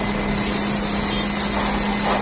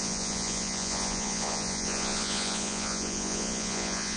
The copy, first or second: second